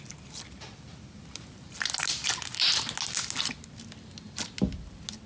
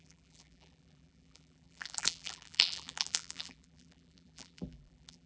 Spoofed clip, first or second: second